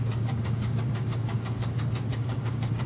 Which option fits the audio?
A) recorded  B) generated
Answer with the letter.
B